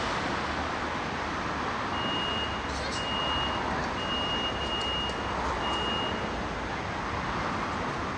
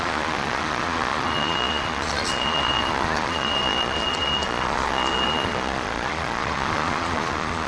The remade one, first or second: second